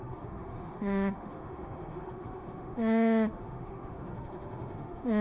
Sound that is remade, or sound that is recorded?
remade